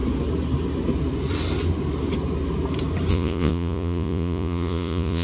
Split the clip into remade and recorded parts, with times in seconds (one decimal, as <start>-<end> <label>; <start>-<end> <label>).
0.0-3.1 recorded; 3.1-5.2 remade